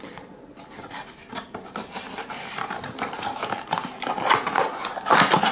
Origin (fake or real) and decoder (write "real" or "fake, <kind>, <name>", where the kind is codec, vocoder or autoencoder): real